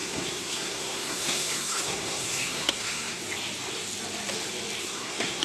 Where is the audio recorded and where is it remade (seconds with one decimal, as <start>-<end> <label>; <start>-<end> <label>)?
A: 0.0-3.2 remade; 3.2-4.8 recorded; 4.8-5.4 remade